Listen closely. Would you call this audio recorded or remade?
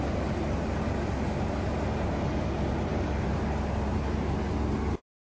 recorded